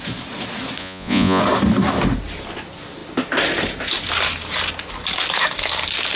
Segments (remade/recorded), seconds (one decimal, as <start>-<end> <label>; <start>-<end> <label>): 0.0-0.8 recorded; 0.8-1.4 remade; 1.4-6.2 recorded